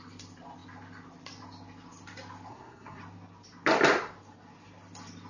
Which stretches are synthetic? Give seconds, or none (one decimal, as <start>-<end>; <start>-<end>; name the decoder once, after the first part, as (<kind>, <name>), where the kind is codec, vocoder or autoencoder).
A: 2.5-3.0 (codec, SNAC)